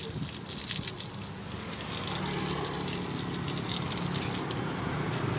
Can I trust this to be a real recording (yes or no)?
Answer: yes